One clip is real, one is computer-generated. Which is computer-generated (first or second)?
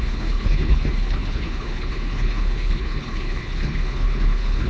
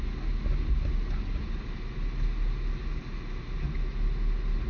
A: first